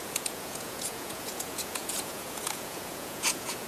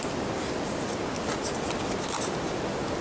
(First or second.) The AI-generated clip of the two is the first